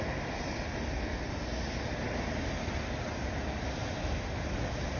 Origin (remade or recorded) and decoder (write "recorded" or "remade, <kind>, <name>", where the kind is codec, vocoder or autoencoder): recorded